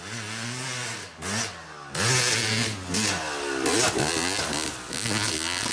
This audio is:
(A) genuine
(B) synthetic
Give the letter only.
A